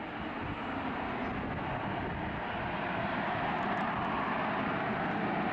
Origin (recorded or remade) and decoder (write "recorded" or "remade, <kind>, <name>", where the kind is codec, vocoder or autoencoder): recorded